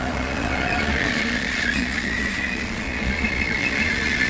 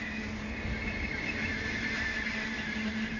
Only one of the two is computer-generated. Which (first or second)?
first